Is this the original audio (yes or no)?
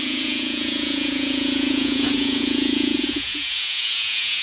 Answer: no